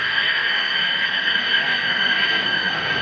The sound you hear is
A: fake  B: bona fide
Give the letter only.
A